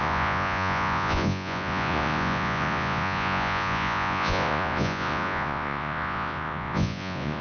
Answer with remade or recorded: remade